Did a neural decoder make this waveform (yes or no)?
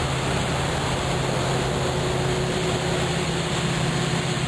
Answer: no